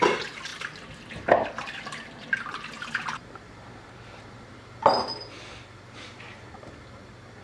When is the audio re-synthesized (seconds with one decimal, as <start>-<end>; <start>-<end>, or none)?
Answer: 0.5-4.9